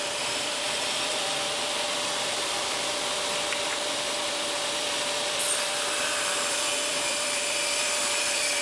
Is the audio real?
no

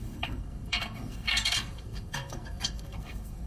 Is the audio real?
no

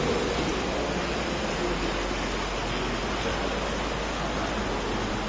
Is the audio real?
yes